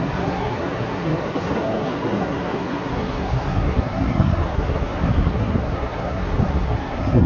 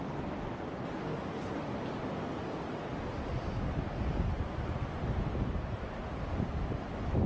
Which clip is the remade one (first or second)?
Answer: first